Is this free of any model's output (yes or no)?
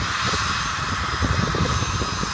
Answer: yes